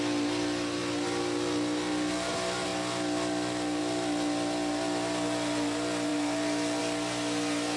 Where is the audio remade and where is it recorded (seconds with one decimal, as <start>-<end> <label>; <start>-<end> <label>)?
0.0-7.8 recorded